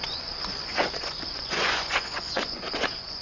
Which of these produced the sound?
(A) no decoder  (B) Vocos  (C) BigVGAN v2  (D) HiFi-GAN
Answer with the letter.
B